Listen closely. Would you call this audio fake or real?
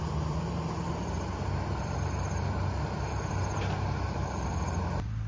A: fake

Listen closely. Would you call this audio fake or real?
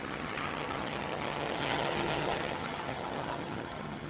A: fake